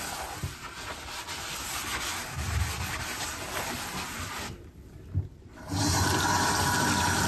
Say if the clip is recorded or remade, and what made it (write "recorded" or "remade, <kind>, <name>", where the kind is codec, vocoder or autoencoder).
recorded